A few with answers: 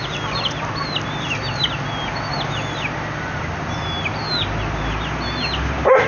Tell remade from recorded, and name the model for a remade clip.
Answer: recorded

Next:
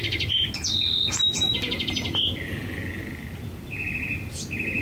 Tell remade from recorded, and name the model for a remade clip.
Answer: recorded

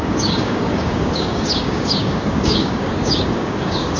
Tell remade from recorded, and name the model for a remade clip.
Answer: remade, codec, DAC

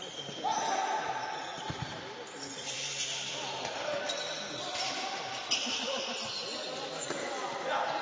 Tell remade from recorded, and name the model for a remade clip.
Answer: recorded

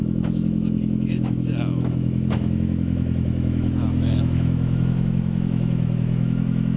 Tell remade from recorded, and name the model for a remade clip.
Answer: remade, autoencoder, DAC-VAE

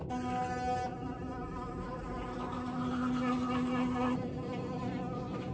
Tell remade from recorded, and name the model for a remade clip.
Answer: recorded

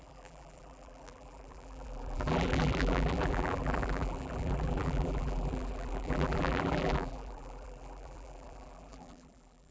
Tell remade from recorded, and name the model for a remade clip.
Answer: remade, vocoder, BigVGAN v2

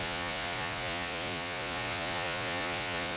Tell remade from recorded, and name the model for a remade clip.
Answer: remade, vocoder, Vocos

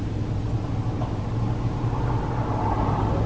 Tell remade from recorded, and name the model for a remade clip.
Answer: recorded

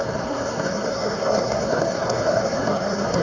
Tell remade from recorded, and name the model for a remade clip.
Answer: remade, codec, SNAC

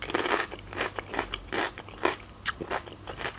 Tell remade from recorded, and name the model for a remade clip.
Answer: recorded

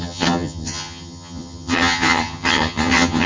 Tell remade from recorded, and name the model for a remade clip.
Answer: remade, vocoder, HiFi-GAN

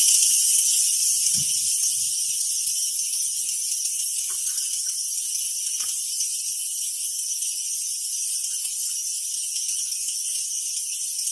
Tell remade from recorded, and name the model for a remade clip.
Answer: recorded